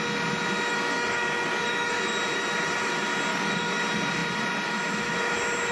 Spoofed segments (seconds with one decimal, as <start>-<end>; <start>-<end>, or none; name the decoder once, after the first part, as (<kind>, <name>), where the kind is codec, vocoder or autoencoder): 0.7-2.1 (codec, DAC); 3.3-3.8